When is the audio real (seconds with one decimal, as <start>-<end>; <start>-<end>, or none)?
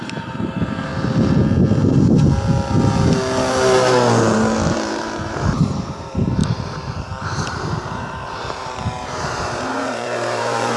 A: 0.9-4.2